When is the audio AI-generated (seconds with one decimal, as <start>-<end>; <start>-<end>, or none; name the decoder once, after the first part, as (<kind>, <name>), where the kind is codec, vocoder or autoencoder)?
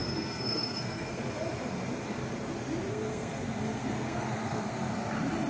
0.0-1.3 (codec, SNAC); 2.9-4.9